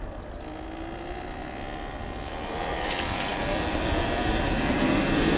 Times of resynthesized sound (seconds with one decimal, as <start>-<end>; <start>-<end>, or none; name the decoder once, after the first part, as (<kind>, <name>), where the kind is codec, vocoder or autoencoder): none